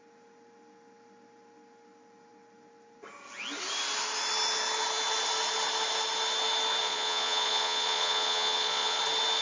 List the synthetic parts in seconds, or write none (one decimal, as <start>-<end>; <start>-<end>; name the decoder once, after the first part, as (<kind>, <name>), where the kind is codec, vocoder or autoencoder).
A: 6.8-9.0 (vocoder, Vocos)